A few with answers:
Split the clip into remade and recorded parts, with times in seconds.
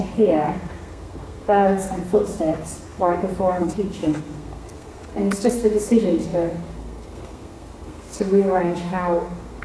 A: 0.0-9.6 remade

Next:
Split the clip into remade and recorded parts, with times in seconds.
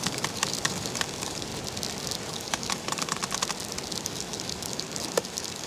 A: 0.0-1.5 remade; 1.5-2.3 recorded; 2.3-3.2 remade; 3.2-4.0 recorded; 4.0-5.7 remade